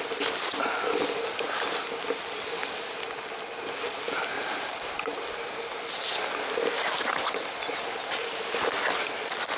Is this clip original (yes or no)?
yes